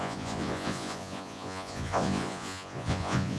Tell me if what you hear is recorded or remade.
remade